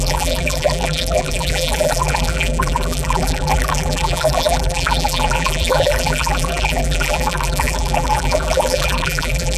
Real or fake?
fake